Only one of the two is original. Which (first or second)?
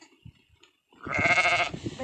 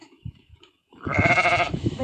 first